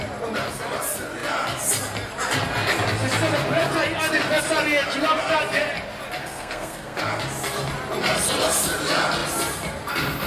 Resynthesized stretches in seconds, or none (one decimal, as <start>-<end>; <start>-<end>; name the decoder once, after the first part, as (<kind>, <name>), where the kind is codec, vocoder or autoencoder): 6.2-7.0 (codec, SNAC)

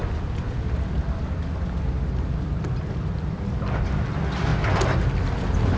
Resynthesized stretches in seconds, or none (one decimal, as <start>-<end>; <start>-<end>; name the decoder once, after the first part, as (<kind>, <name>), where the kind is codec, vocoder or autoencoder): none

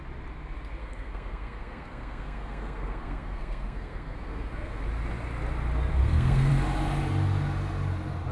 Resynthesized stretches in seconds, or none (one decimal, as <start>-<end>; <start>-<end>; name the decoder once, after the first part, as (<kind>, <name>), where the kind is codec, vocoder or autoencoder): 0.8-4.8 (codec, SNAC); 6.0-6.5

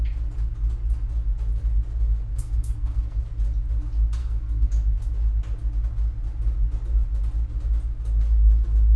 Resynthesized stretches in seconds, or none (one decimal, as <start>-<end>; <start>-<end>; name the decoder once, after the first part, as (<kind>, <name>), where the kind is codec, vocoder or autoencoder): 2.3-3.2 (codec, SNAC); 4.2-4.7

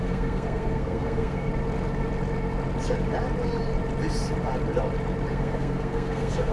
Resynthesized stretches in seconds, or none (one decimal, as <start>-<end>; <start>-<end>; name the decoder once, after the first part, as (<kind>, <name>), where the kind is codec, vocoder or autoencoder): 0.0-1.5 (codec, SNAC); 5.3-6.5

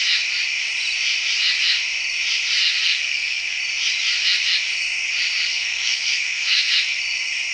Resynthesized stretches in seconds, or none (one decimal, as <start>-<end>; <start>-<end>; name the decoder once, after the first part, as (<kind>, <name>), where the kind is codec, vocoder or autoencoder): 2.8-3.6 (codec, SNAC); 5.5-6.7

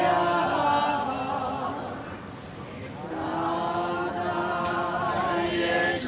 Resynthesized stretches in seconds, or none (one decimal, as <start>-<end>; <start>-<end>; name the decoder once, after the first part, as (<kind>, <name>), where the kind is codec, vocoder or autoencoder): none